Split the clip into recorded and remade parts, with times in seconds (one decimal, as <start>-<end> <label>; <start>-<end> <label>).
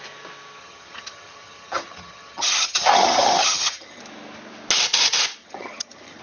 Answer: 0.0-0.6 recorded; 0.6-4.0 remade; 4.0-5.4 recorded; 5.4-6.2 remade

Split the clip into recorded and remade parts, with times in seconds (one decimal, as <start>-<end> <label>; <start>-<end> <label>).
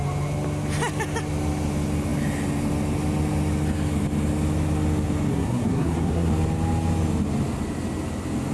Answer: 0.0-5.3 recorded; 5.3-6.3 remade; 6.3-8.5 recorded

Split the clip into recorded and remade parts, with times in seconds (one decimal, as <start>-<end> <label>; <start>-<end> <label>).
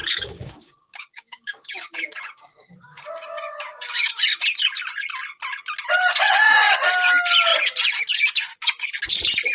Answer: 0.0-4.2 remade; 4.2-8.5 recorded; 8.5-9.0 remade; 9.0-9.5 recorded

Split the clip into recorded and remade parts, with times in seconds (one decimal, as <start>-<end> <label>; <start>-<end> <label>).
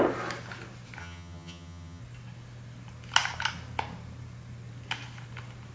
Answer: 0.0-1.0 recorded; 1.0-2.0 remade; 2.0-5.7 recorded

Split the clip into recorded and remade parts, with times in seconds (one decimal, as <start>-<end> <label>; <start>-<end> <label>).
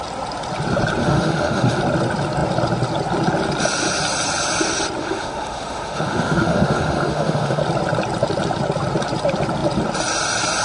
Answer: 0.0-1.0 recorded; 1.0-1.8 remade; 1.8-5.0 recorded; 5.0-7.6 remade; 7.6-10.6 recorded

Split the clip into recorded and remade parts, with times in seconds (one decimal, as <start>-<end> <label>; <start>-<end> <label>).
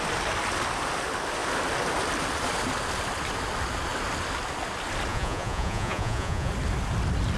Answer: 0.0-5.1 recorded; 5.1-6.5 remade; 6.5-7.4 recorded